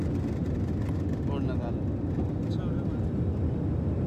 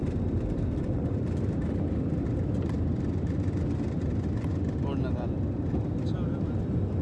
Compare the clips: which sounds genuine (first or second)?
first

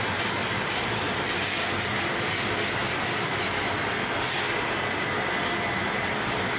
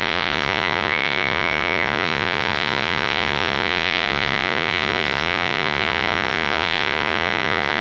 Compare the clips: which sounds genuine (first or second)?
first